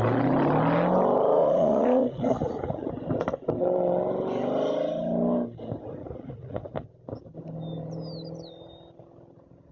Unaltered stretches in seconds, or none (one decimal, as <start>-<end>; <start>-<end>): 0.0-1.4; 2.9-6.0; 6.7-9.7